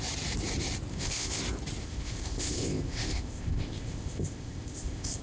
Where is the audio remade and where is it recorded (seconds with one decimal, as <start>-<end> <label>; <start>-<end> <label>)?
0.0-0.9 recorded; 0.9-1.4 remade; 1.4-1.8 recorded; 1.8-5.2 remade

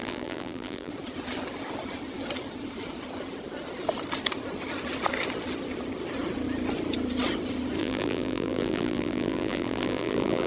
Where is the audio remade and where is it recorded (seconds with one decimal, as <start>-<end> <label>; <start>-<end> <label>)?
0.0-0.9 remade; 0.9-7.8 recorded; 7.8-10.5 remade

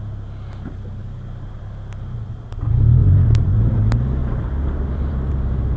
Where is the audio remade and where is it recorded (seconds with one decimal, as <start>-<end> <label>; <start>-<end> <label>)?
0.0-1.0 recorded; 1.0-1.6 remade; 1.6-3.0 recorded; 3.0-3.8 remade; 3.8-4.2 recorded; 4.2-5.3 remade; 5.3-5.8 recorded

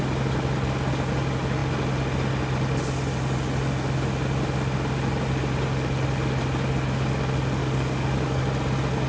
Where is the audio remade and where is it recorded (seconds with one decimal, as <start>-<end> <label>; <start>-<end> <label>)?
0.0-7.6 recorded; 7.6-8.4 remade; 8.4-9.1 recorded

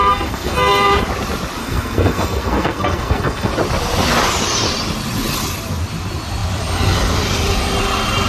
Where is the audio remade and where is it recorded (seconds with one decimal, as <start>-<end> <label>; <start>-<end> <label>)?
0.0-0.9 remade; 0.9-1.6 recorded; 1.6-3.5 remade; 3.5-8.3 recorded